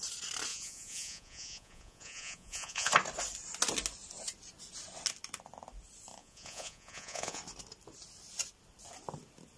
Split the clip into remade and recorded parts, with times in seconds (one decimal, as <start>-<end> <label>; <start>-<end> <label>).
0.0-0.5 recorded; 0.5-2.9 remade; 2.9-6.2 recorded; 6.2-7.4 remade; 7.4-9.6 recorded